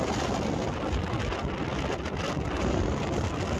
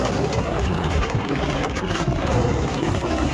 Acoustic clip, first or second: first